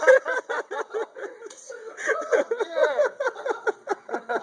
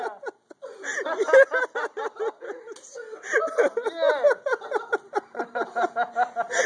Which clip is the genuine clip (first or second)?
second